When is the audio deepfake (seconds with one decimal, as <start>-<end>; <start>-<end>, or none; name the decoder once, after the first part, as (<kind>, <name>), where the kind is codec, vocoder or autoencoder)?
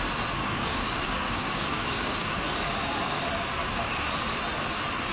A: 0.4-2.4 (codec, DAC); 3.6-4.1